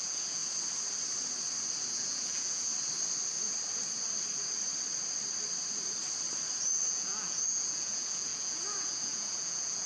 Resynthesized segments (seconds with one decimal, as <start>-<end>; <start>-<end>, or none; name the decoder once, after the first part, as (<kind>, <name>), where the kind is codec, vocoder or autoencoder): 0.0-0.4 (vocoder, Vocos); 1.9-2.7; 6.9-9.9